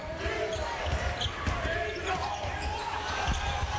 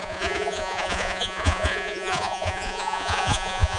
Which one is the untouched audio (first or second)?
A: first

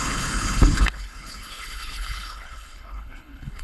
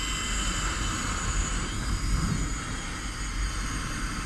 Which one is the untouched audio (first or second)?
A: second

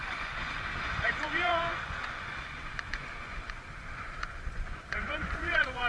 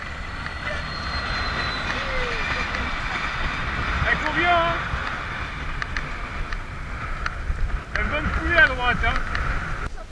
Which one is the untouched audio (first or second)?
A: second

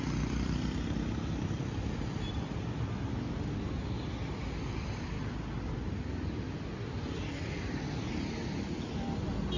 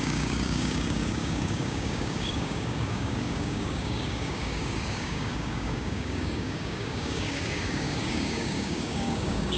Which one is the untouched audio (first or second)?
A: first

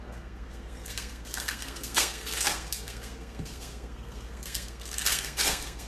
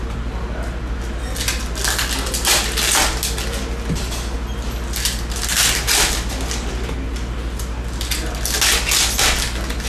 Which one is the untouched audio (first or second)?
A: second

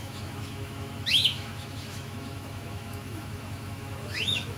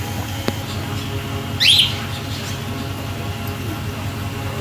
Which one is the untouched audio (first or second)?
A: second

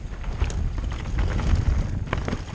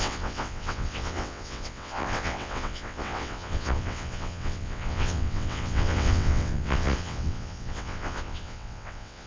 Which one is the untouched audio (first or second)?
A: first